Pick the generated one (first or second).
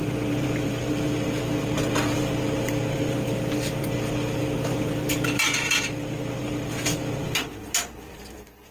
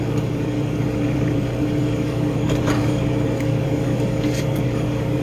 second